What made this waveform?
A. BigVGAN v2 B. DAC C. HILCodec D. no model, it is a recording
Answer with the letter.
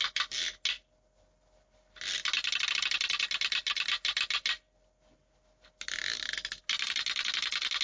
D